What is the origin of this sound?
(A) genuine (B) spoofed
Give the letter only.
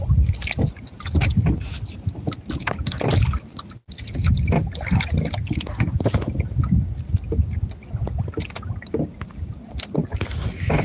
A